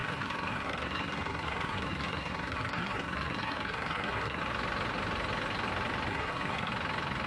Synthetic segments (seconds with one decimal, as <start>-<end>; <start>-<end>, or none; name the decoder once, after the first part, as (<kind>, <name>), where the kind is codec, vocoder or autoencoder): 0.0-4.4 (codec, SNAC); 6.1-6.7